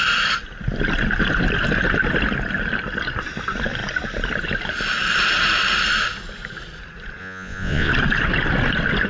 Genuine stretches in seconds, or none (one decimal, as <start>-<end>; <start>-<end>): 0.0-7.2; 7.9-9.1